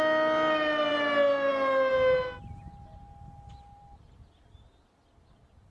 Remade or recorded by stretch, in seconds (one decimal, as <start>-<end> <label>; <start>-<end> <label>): 0.0-5.7 recorded